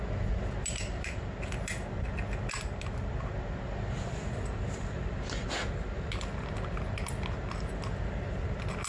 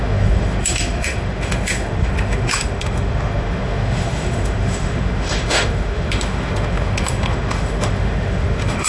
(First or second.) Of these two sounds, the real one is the first